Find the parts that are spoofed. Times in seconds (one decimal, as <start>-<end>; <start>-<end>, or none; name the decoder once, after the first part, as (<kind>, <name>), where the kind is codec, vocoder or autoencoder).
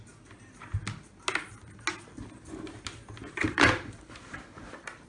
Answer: 3.4-5.1 (vocoder, BigVGAN v2)